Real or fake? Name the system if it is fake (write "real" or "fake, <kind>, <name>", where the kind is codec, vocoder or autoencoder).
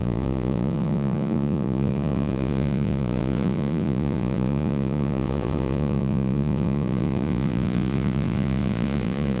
fake, vocoder, Vocos